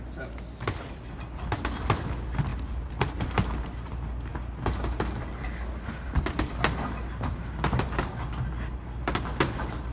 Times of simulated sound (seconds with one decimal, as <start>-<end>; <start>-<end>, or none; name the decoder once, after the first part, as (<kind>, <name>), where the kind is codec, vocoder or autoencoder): none